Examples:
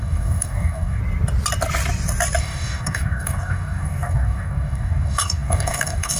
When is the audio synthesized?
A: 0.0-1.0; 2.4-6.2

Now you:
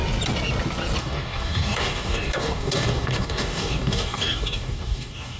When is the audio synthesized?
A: 1.0-5.4

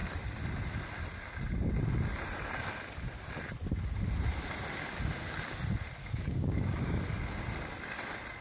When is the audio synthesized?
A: 6.0-7.0

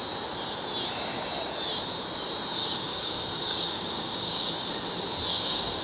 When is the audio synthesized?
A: 2.6-4.5; 5.3-5.8

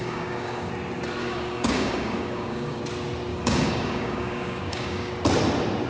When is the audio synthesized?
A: 0.0-0.7; 1.2-2.8; 3.3-5.1